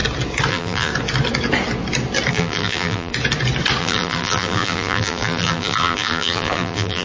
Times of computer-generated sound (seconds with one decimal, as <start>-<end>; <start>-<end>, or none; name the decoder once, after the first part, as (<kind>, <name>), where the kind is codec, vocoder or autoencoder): 0.5-0.9 (vocoder, BigVGAN v2); 2.3-3.1; 3.8-7.0